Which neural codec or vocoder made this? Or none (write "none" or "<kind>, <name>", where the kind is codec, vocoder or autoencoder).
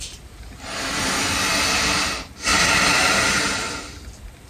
none